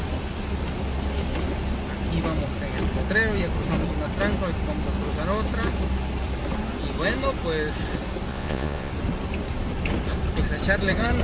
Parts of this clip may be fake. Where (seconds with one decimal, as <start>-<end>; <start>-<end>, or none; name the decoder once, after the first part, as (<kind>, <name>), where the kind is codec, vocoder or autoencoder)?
8.3-8.9 (vocoder, Vocos)